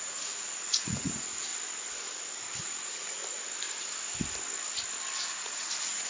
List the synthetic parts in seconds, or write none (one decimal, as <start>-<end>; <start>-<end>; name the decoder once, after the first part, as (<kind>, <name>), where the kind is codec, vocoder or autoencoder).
0.0-1.5 (vocoder, Vocos); 2.6-3.2; 5.2-6.1